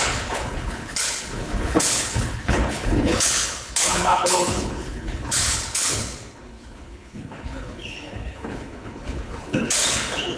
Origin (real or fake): fake